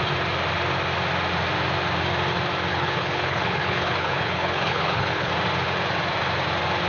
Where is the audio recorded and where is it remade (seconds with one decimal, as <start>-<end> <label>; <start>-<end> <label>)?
0.0-2.7 recorded; 2.7-5.3 remade; 5.3-6.9 recorded